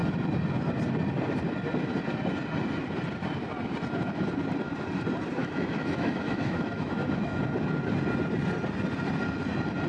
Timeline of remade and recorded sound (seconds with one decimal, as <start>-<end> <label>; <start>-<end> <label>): 0.0-5.4 recorded; 5.4-7.4 remade; 7.4-9.9 recorded